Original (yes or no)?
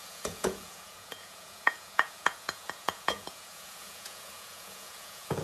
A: no